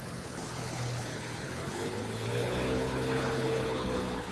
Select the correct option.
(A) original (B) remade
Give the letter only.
B